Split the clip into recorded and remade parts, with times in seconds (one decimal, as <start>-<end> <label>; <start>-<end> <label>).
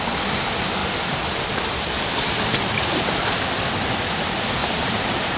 0.0-4.6 recorded; 4.6-5.4 remade